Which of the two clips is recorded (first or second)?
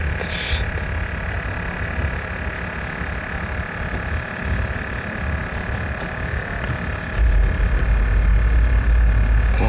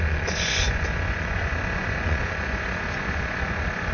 first